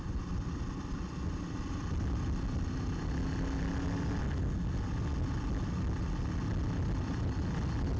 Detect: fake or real real